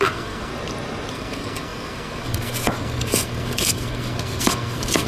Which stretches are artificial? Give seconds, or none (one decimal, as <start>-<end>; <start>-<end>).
0.0-0.5; 1.1-5.1